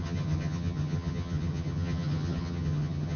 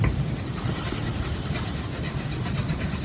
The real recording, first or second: second